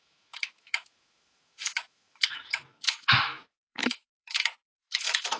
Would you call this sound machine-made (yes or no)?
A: yes